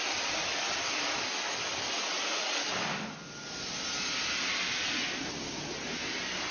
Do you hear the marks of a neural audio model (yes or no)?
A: no